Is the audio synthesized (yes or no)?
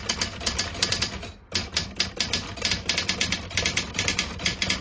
no